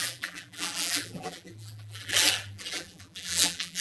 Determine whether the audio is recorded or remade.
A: remade